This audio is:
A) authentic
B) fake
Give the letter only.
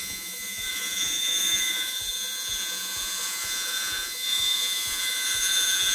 B